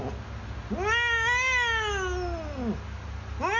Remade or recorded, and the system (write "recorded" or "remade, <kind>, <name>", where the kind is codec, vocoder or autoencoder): recorded